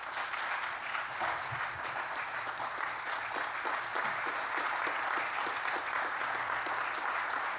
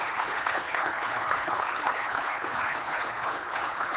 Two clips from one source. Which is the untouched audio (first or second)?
first